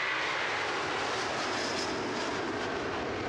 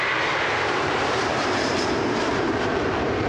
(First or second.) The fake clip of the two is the second